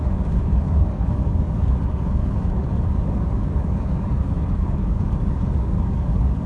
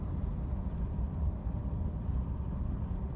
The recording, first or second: second